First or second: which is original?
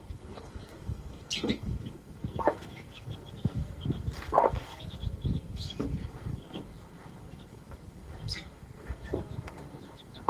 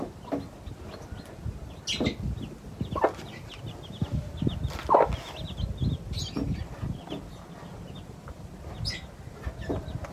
second